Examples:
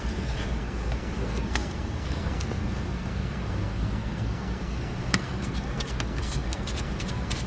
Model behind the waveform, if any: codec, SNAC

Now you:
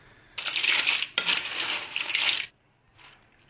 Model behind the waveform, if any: none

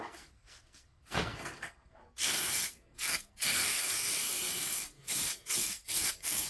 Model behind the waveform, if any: codec, SNAC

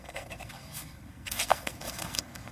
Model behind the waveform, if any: codec, SNAC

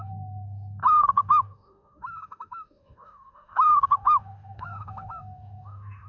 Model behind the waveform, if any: autoencoder, DAC-VAE